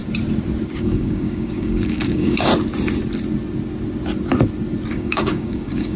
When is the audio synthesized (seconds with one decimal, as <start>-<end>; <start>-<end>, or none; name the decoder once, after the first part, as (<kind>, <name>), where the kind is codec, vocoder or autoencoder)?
0.8-2.5 (codec, DAC); 4.9-6.0